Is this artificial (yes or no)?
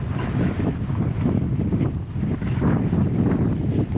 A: no